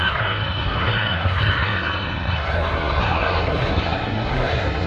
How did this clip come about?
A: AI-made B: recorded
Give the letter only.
A